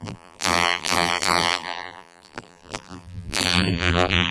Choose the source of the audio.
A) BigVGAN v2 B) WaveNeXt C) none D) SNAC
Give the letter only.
A